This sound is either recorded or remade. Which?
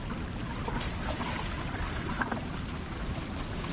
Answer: recorded